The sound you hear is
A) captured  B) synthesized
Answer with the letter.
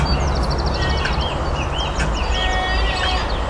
A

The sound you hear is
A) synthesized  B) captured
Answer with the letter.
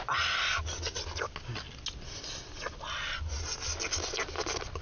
B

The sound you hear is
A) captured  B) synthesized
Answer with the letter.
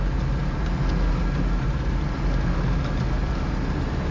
A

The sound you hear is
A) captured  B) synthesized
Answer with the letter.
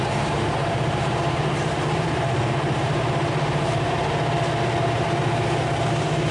B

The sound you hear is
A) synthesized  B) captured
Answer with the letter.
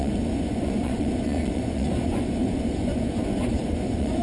A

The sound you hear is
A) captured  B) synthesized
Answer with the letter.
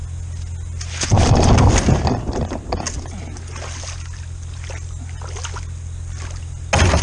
A